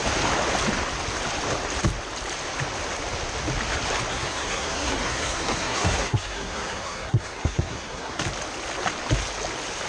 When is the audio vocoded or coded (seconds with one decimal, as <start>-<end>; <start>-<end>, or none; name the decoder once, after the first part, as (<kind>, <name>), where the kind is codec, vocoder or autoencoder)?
4.1-8.2 (codec, SNAC)